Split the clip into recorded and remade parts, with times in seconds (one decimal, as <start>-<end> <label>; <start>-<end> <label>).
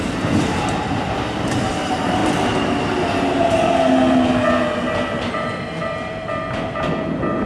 0.0-2.2 remade; 2.2-4.8 recorded; 4.8-7.5 remade